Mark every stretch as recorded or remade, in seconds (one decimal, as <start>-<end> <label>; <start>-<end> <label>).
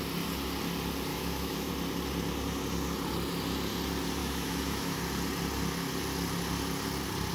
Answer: 0.0-1.1 recorded; 1.1-1.7 remade; 1.7-4.2 recorded; 4.2-5.0 remade; 5.0-7.3 recorded